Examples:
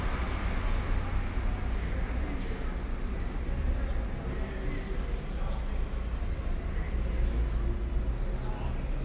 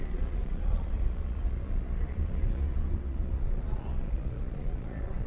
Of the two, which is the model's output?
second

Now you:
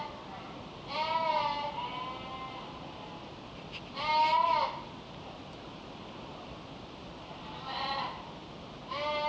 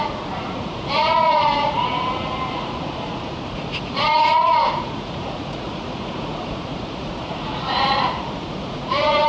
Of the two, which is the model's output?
second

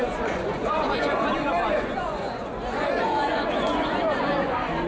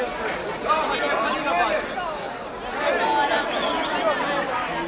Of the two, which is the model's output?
first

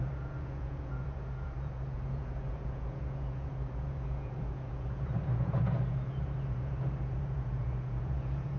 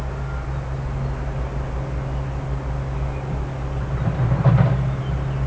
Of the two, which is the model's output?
first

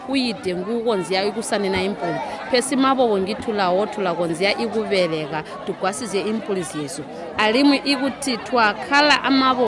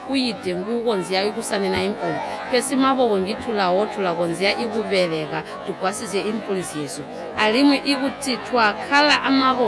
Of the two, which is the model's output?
second